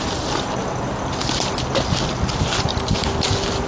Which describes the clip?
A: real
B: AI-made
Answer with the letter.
A